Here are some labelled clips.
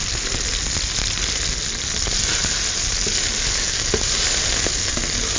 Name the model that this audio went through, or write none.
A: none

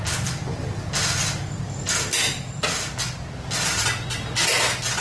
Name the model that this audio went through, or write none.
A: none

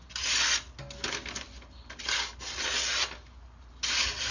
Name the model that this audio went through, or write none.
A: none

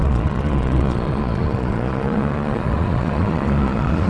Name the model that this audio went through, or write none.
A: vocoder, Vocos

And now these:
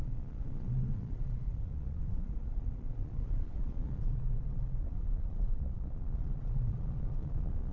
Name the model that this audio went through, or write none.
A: vocoder, Vocos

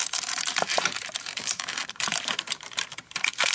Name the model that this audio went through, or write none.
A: vocoder, BigVGAN v2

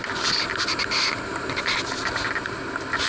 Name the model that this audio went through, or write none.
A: none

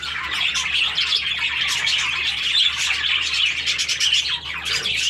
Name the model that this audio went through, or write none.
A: none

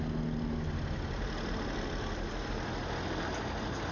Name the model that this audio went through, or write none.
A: none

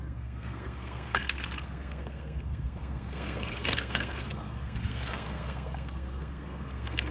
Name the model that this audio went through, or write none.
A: codec, SNAC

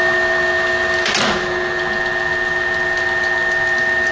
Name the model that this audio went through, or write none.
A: none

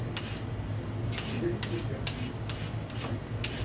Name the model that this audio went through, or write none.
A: none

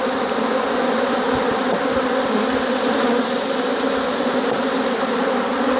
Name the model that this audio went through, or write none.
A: none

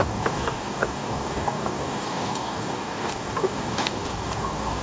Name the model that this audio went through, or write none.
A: codec, DAC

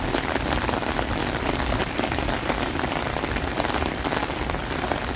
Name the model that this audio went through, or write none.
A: none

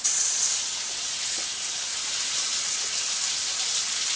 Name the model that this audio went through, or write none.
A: none